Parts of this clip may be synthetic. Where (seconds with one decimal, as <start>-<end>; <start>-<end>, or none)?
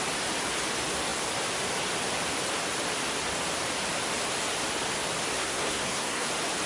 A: 5.4-6.3